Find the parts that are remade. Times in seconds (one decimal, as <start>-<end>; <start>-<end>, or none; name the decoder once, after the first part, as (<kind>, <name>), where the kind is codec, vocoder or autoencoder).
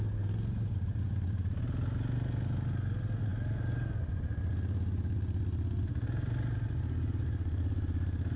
none